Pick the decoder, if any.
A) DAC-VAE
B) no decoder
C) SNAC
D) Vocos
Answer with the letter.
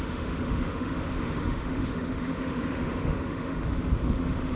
A